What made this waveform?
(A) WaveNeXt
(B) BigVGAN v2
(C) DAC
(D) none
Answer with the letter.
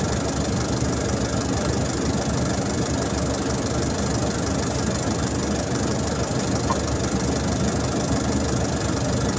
D